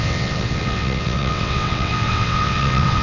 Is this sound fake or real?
fake